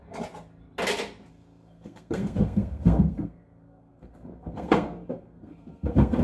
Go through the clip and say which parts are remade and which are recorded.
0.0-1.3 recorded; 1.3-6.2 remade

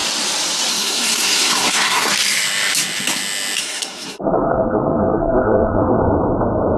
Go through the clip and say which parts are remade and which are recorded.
0.0-0.7 recorded; 0.7-2.1 remade; 2.1-3.6 recorded; 3.6-6.0 remade; 6.0-6.8 recorded

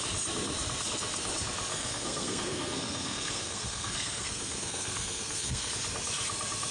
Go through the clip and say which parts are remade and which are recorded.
0.0-1.7 recorded; 1.7-5.7 remade; 5.7-6.7 recorded

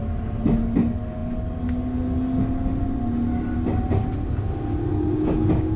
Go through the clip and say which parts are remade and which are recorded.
0.0-4.9 recorded; 4.9-5.8 remade

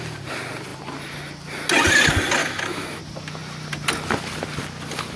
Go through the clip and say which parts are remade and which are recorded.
0.0-2.4 recorded; 2.4-3.0 remade; 3.0-5.2 recorded

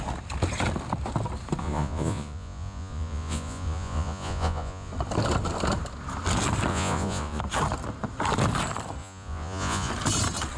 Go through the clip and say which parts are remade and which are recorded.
0.0-1.6 recorded; 1.6-4.9 remade; 4.9-6.7 recorded; 6.7-7.4 remade; 7.4-9.0 recorded; 9.0-9.9 remade; 9.9-10.6 recorded